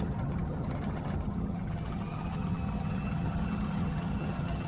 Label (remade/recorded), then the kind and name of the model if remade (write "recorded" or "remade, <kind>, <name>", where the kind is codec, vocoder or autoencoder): remade, vocoder, HiFi-GAN